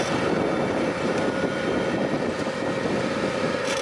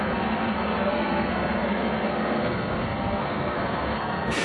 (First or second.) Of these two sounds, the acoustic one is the first